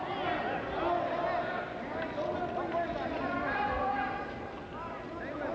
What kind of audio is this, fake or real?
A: real